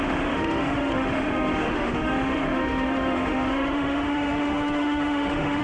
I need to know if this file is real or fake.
fake